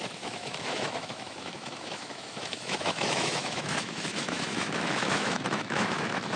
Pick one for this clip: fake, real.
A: fake